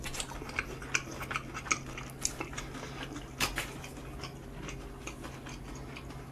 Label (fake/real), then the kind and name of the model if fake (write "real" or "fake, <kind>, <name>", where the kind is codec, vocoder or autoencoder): real